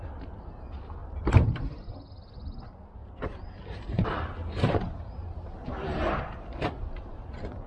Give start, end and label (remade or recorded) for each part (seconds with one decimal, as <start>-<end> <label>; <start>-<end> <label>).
0.0-1.0 recorded; 1.0-2.1 remade; 2.1-3.0 recorded; 3.0-6.2 remade; 6.2-7.7 recorded